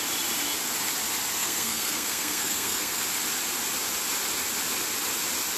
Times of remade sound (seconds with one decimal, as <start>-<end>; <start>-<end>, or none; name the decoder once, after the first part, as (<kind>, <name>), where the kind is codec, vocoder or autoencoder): 1.4-3.0 (codec, SNAC)